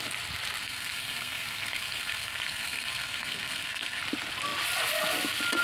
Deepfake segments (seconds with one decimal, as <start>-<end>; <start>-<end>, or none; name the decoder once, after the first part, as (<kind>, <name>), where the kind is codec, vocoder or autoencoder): 0.6-4.0 (codec, SNAC)